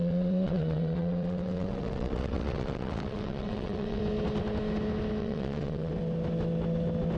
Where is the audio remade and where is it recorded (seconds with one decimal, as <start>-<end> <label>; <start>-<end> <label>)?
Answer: 0.0-4.0 remade; 4.0-5.2 recorded; 5.2-5.9 remade; 5.9-7.2 recorded